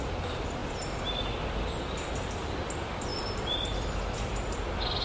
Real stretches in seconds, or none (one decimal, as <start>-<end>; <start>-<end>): 0.0-3.1; 3.9-5.0

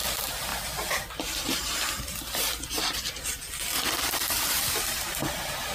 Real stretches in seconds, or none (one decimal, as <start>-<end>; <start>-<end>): 0.0-5.7

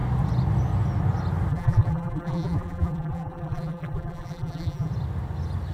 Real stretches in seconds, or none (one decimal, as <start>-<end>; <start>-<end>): 0.0-1.5; 4.9-5.7

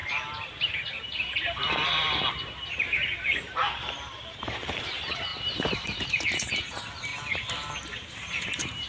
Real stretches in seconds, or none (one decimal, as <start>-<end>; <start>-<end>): 7.1-8.1

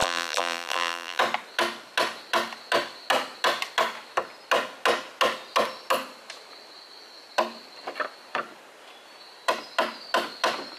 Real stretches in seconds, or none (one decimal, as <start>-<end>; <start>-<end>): 1.2-10.8

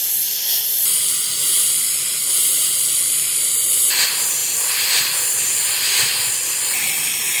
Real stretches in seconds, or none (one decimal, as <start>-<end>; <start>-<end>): 0.0-2.4; 3.8-7.4